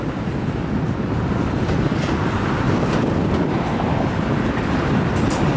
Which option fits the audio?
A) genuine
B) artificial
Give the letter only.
A